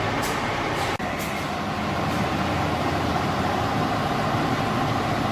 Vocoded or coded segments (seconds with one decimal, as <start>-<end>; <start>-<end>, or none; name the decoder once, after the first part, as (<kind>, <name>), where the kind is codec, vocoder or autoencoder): none